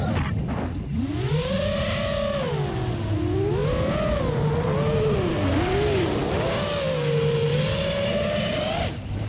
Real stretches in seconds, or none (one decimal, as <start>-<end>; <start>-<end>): 0.0-9.3